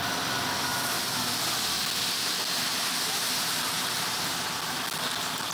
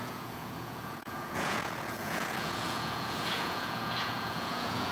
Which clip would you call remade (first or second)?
second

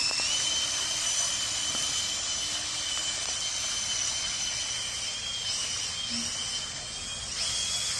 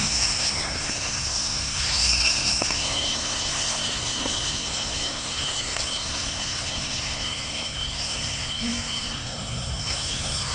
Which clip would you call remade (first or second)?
second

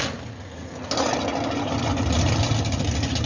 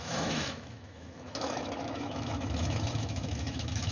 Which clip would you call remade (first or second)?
second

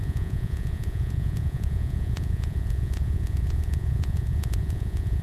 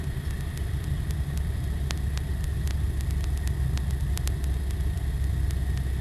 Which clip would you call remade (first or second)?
first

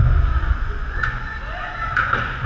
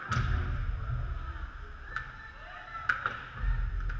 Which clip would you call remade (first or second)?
first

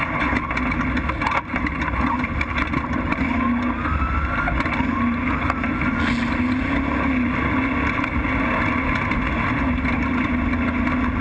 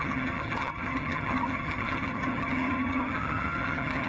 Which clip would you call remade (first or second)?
second